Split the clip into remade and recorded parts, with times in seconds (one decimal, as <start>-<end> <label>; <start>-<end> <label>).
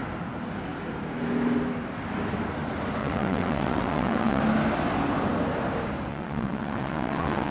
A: 0.0-3.0 recorded; 3.0-4.4 remade; 4.4-6.1 recorded; 6.1-7.5 remade